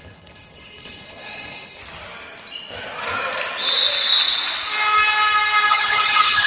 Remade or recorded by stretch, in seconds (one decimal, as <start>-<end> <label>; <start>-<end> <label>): 0.0-1.8 remade; 1.8-5.7 recorded; 5.7-6.5 remade